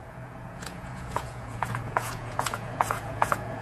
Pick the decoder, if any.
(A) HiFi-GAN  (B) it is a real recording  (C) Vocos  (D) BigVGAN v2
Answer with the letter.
C